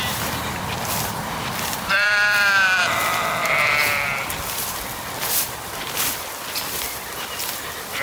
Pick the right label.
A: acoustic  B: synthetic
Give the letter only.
B